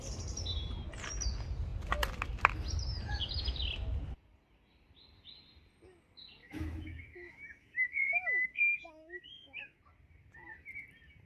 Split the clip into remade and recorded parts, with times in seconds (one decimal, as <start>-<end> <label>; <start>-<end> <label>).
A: 0.0-6.4 recorded; 6.4-9.8 remade; 9.8-11.3 recorded